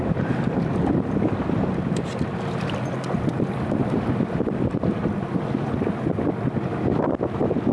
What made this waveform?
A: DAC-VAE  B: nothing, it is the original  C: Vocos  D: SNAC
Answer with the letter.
B